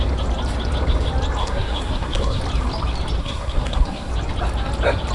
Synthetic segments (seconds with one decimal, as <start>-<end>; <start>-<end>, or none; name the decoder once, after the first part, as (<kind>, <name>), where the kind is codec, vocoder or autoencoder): 1.4-2.4 (codec, SNAC); 3.2-4.1